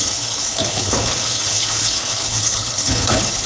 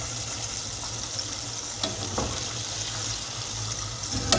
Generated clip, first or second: first